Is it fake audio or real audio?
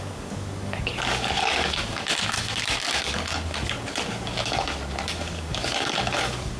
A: fake